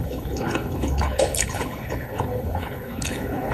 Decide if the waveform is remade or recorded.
remade